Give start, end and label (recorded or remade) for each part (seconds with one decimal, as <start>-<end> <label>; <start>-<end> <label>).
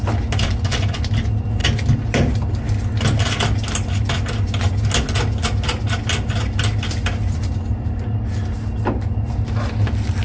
0.0-10.2 recorded